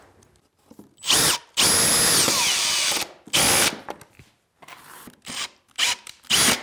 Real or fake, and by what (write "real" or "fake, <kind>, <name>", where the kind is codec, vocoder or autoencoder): real